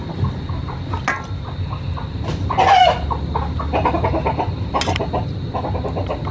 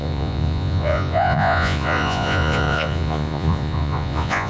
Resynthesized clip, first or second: second